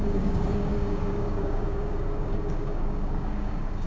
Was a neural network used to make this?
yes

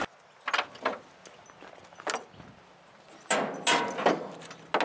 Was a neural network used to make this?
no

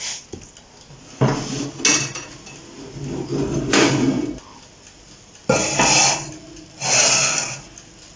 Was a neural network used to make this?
no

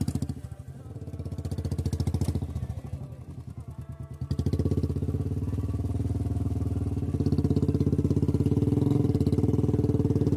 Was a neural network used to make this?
no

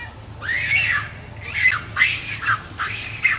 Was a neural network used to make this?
no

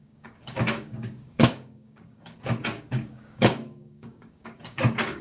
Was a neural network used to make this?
yes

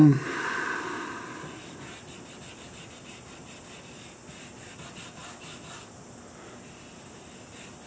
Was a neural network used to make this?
no